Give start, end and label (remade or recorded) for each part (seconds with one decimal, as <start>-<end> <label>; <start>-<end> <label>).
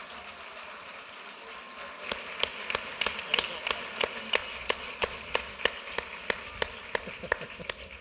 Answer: 0.0-4.4 recorded; 4.4-5.6 remade; 5.6-8.0 recorded